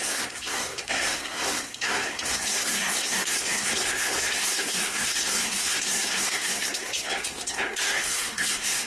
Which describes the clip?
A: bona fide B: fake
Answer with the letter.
B